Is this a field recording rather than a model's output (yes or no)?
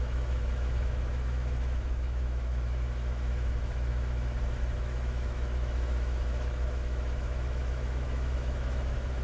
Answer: no